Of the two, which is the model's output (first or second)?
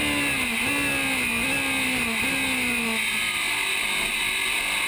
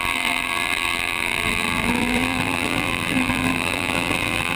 second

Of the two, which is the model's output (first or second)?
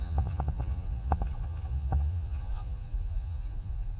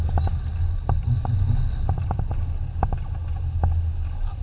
first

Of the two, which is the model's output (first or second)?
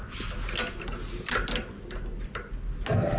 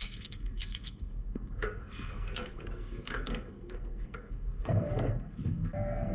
second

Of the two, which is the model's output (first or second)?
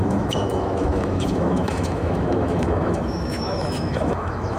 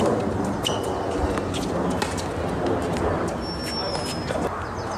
first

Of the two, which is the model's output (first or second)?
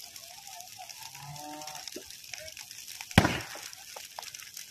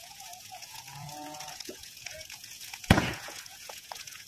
second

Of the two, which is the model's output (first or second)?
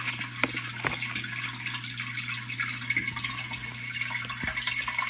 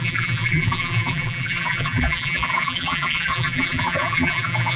second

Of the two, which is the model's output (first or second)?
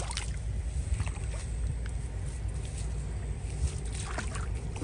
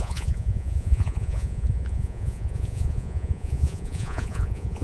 second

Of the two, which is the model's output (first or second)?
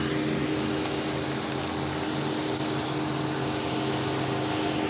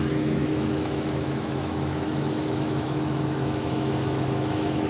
second